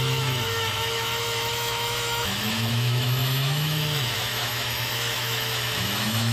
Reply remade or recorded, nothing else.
remade